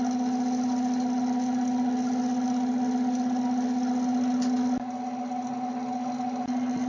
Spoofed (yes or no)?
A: no